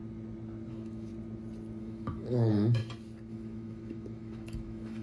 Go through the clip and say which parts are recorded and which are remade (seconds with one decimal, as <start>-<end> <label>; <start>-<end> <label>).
0.0-0.7 recorded; 0.7-1.1 remade; 1.1-1.8 recorded; 1.8-2.8 remade; 2.8-3.3 recorded; 3.3-5.0 remade